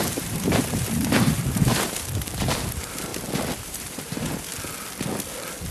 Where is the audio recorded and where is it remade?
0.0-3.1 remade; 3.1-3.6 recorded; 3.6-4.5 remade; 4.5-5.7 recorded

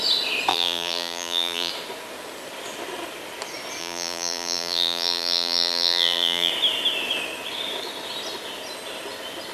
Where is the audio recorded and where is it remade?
0.0-0.5 recorded; 0.5-1.7 remade; 1.7-3.8 recorded; 3.8-6.5 remade; 6.5-9.5 recorded

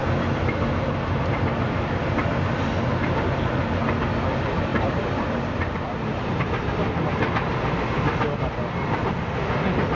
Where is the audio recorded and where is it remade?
0.0-4.7 recorded; 4.7-7.0 remade; 7.0-9.9 recorded